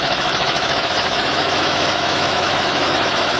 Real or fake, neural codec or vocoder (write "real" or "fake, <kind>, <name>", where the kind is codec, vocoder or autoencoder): fake, autoencoder, DAC-VAE